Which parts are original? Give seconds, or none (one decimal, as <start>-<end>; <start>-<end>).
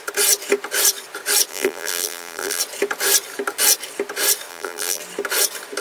0.0-1.5; 2.6-4.5; 5.0-5.8